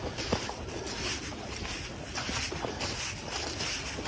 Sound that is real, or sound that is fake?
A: real